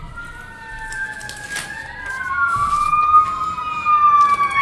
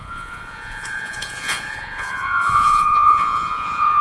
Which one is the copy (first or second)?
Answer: second